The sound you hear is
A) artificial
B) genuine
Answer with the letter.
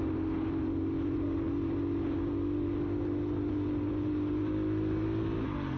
B